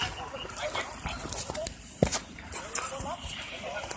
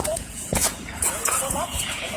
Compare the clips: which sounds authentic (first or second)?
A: first